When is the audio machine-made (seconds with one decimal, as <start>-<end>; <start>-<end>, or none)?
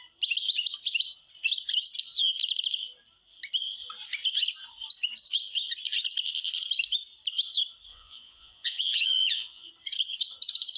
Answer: 7.9-9.7